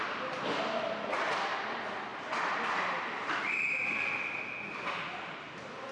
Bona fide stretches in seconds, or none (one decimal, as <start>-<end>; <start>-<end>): 0.0-5.9